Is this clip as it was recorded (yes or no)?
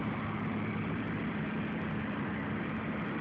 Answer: no